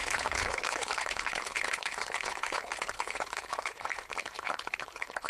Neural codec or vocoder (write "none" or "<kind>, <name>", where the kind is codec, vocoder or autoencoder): codec, HILCodec